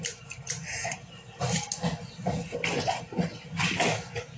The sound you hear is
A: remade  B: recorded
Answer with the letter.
B